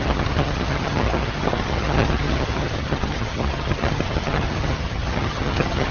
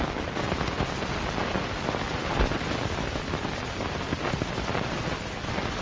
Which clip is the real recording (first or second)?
second